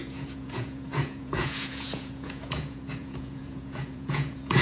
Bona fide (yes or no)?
no